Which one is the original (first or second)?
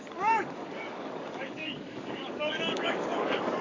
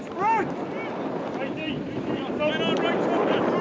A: second